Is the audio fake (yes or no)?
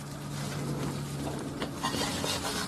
no